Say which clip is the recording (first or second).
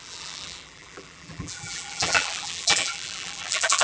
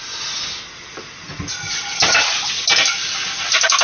second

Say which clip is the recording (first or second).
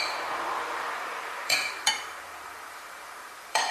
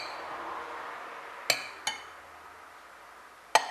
second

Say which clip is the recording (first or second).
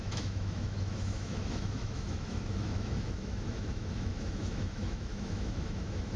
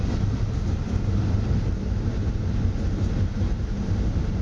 second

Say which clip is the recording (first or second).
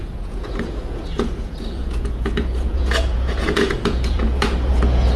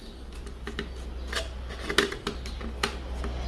second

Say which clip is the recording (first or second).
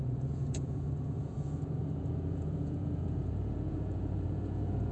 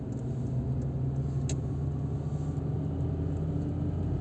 second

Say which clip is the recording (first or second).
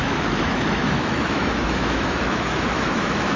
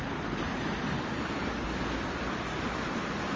second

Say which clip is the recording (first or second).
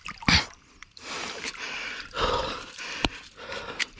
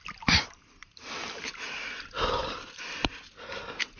second